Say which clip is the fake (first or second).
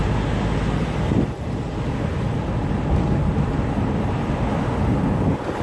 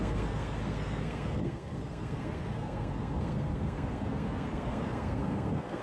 second